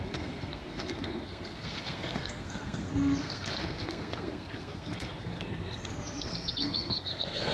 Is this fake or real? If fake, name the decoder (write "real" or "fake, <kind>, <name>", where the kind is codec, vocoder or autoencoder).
fake, codec, SNAC